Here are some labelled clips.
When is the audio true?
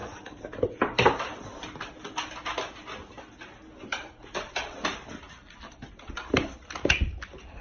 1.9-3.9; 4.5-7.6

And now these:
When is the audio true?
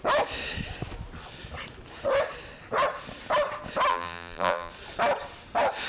0.0-3.9; 4.7-5.9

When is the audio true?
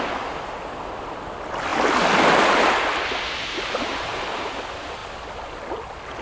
0.0-3.9; 4.6-6.2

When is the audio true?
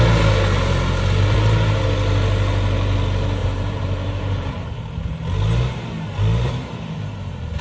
0.0-3.4; 4.5-6.3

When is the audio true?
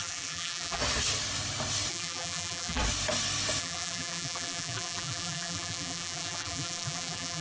0.8-1.9; 2.8-3.6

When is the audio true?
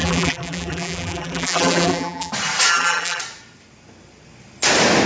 2.3-2.7; 3.2-5.1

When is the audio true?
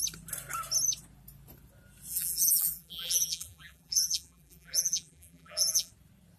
0.0-2.1; 5.9-6.4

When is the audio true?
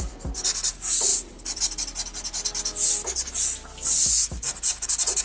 0.0-1.1; 1.6-5.2